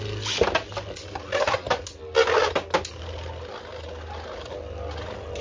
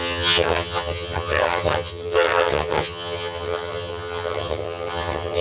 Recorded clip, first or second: first